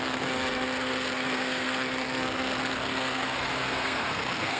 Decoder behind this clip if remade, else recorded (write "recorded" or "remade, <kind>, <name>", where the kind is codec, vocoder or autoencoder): remade, codec, SNAC